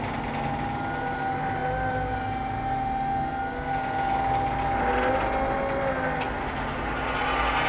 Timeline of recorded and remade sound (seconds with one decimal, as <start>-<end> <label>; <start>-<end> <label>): 0.0-7.7 recorded